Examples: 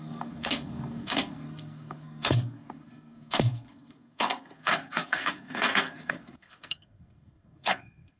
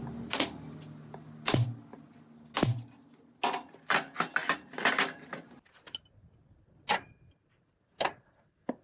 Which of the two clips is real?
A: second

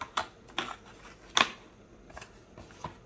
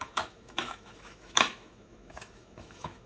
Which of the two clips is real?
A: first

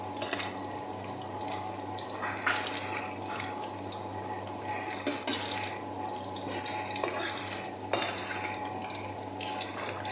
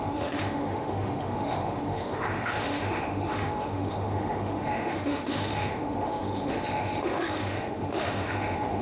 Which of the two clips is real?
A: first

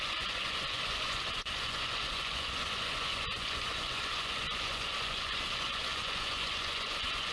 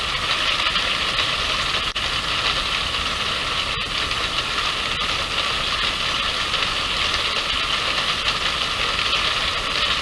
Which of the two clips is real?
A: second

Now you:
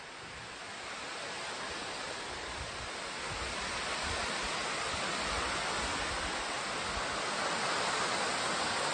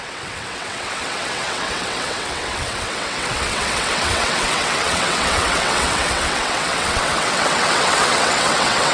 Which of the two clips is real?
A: first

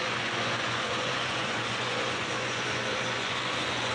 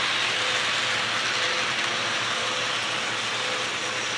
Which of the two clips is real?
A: second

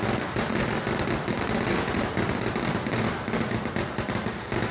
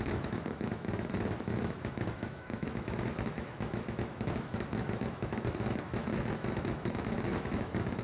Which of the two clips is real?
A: first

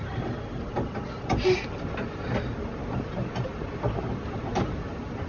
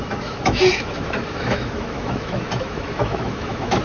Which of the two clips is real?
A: first